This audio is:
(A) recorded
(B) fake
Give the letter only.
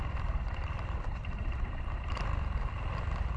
B